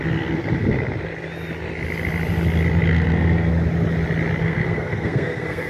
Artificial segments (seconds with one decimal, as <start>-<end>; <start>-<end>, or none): 2.9-3.5; 4.4-5.7